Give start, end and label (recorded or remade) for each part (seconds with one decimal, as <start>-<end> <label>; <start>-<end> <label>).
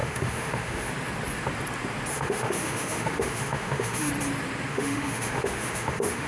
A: 0.0-0.9 remade; 0.9-2.1 recorded; 2.1-4.1 remade; 4.1-4.7 recorded; 4.7-6.3 remade